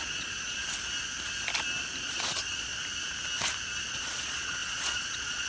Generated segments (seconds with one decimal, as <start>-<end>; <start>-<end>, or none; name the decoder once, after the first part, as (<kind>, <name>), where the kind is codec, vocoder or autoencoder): 0.0-0.6 (vocoder, Vocos); 2.0-2.7; 3.9-5.5